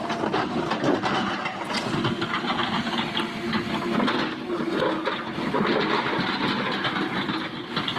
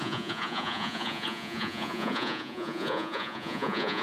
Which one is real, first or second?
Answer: first